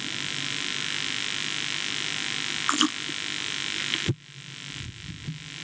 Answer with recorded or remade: recorded